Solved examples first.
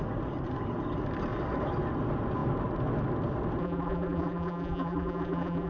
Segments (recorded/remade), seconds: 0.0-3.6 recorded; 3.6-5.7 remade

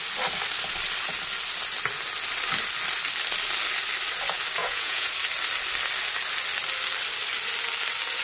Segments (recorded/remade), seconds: 0.0-4.6 recorded; 4.6-5.1 remade; 5.1-8.2 recorded

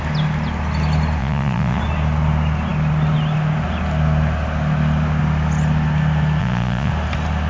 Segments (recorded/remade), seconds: 0.0-1.2 recorded; 1.2-1.8 remade; 1.8-6.4 recorded; 6.4-6.9 remade; 6.9-7.5 recorded

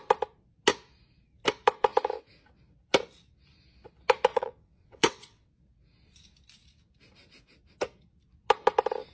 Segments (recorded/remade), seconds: 0.0-4.3 recorded; 4.3-5.5 remade; 5.5-9.1 recorded